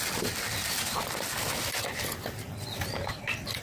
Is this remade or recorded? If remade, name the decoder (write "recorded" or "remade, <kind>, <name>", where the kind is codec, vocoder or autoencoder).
recorded